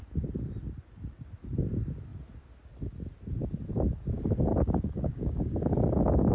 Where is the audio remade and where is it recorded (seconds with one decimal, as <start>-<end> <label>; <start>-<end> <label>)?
0.0-4.5 recorded; 4.5-5.6 remade; 5.6-6.3 recorded